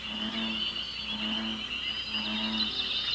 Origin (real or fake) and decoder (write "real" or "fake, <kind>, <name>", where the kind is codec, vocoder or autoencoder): real